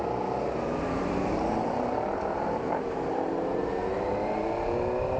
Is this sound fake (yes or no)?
yes